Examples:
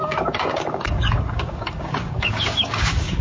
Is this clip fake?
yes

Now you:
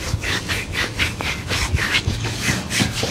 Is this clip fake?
yes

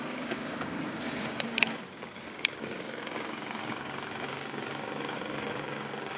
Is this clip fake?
yes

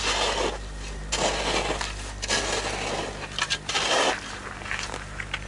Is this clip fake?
no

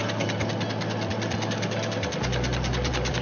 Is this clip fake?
no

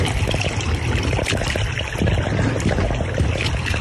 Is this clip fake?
no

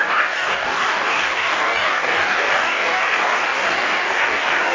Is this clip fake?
yes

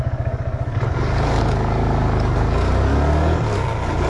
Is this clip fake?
yes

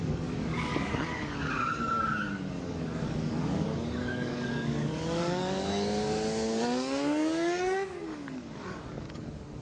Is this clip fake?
yes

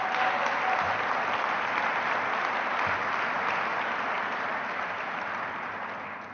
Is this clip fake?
no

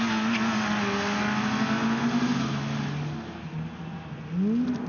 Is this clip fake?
no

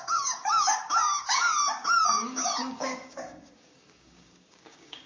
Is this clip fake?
yes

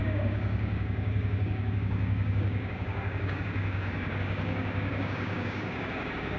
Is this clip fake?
yes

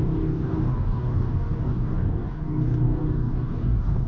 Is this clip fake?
yes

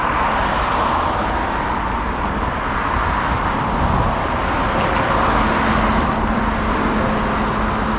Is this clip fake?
no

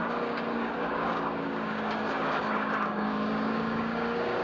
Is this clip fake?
yes